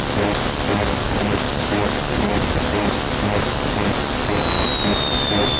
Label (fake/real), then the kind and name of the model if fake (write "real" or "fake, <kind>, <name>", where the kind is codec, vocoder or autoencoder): real